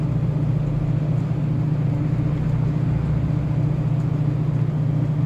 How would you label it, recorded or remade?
recorded